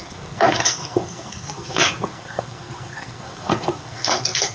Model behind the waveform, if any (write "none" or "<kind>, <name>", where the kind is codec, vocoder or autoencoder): codec, SNAC